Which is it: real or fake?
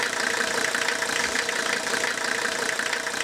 fake